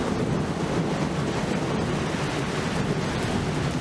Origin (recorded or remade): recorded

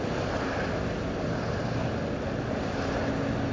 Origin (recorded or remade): recorded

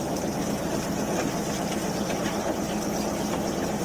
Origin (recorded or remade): recorded